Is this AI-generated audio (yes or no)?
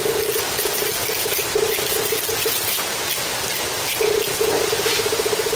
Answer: no